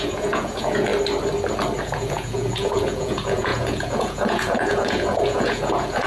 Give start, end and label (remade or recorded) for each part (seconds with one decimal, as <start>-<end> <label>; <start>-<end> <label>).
0.0-0.9 remade; 0.9-1.8 recorded; 1.8-6.1 remade